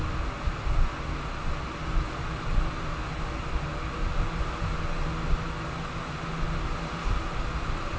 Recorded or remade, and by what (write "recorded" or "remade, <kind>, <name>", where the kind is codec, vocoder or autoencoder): recorded